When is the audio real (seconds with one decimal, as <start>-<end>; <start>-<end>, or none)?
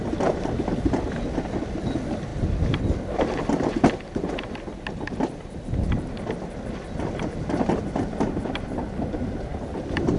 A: 0.0-10.2